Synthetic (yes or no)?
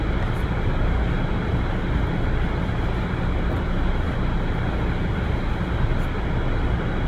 no